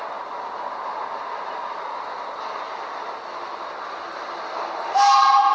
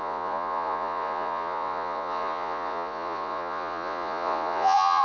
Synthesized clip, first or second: second